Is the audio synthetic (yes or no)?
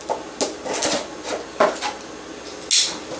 no